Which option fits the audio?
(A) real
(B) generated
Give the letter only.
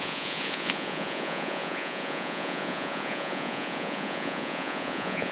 B